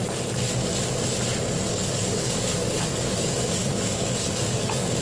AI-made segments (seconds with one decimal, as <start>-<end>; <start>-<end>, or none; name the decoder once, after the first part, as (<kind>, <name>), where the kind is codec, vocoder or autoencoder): 1.7-5.0 (codec, DAC)